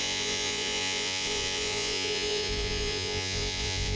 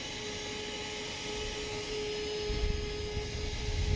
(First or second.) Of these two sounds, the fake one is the first